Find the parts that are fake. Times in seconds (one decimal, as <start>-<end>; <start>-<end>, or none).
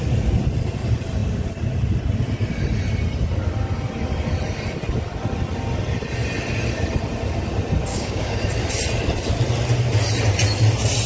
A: 7.9-8.4